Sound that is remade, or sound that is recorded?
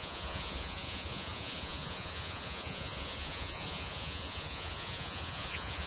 remade